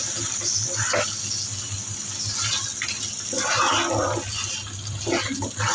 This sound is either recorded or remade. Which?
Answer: recorded